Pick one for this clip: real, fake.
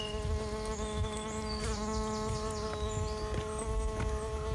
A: real